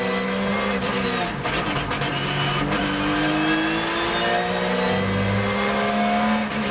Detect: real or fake real